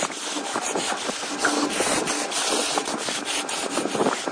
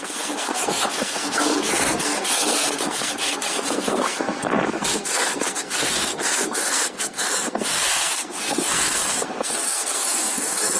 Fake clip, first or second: second